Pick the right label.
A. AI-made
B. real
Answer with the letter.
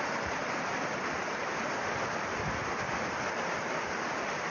A